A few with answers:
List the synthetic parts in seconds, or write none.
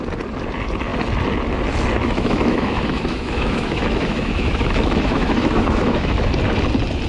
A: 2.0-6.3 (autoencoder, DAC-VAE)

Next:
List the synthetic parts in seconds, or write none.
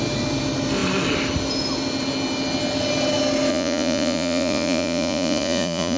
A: 3.5-6.0 (vocoder, Vocos)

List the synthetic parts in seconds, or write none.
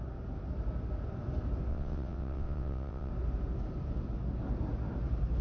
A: 1.7-3.1 (vocoder, WaveNeXt)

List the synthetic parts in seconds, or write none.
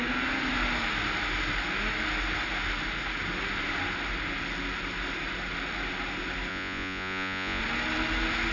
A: 6.5-7.6 (vocoder, Vocos)